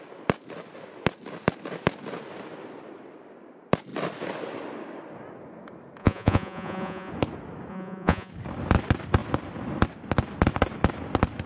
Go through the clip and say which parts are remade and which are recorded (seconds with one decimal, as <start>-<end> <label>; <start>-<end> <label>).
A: 0.0-6.0 recorded; 6.0-7.1 remade; 7.1-7.7 recorded; 7.7-8.3 remade; 8.3-11.5 recorded